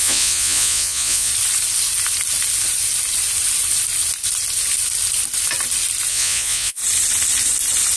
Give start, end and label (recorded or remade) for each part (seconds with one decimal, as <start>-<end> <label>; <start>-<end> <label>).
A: 0.0-1.3 remade; 1.3-6.1 recorded; 6.1-6.8 remade; 6.8-8.0 recorded